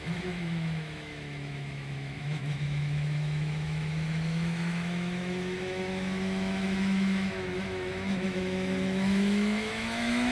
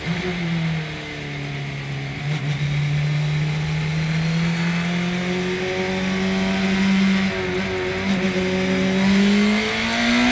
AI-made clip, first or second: first